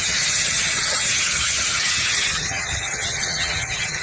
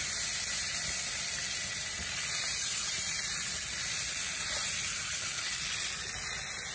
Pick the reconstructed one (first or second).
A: first